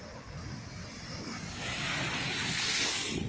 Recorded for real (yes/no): yes